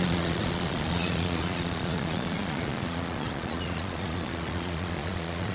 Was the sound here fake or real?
fake